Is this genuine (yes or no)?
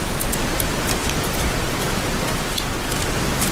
yes